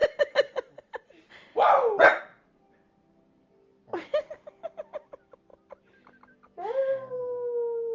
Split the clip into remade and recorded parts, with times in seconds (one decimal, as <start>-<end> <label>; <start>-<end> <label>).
0.0-2.0 recorded; 2.0-2.6 remade; 2.6-7.9 recorded